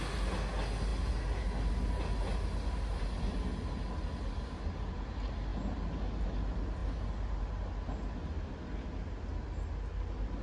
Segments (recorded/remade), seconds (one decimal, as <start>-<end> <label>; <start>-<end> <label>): 0.0-10.4 recorded